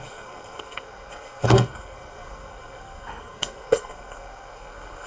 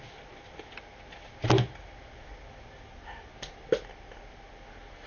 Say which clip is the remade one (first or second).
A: first